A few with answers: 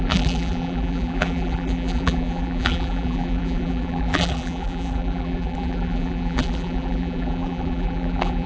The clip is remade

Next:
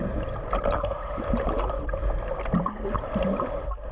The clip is remade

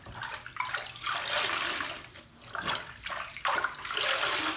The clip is recorded